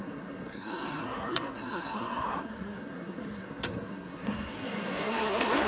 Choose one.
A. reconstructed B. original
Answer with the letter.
A